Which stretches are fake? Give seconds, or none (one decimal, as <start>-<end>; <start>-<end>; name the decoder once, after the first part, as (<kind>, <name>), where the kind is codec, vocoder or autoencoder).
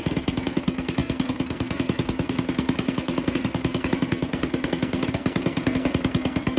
0.0-6.6 (codec, SNAC)